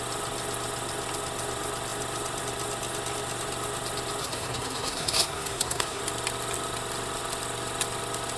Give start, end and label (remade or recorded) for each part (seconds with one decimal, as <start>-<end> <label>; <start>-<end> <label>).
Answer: 0.0-4.2 recorded; 4.2-6.0 remade; 6.0-8.4 recorded